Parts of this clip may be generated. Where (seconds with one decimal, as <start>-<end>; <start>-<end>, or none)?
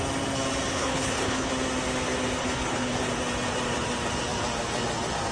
0.7-1.5; 2.4-3.0